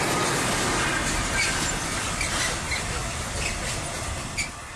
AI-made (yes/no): no